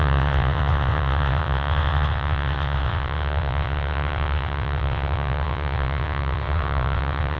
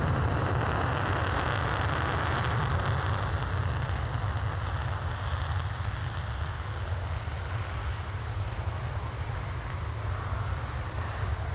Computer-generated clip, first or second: first